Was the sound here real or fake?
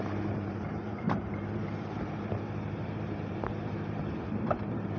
fake